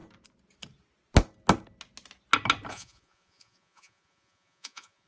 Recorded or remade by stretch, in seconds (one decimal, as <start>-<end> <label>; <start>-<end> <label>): 0.0-2.7 recorded; 2.7-5.1 remade